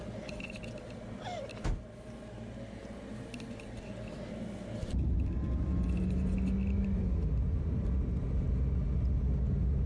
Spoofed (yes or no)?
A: no